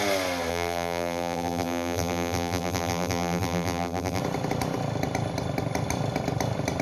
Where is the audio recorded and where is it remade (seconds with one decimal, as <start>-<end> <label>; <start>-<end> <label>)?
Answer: 0.0-0.5 recorded; 0.5-4.2 remade; 4.2-6.8 recorded